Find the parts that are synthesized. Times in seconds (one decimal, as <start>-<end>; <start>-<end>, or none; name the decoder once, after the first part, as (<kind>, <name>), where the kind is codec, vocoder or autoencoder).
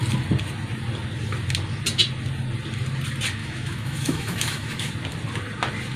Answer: 3.4-4.9 (autoencoder, DAC-VAE)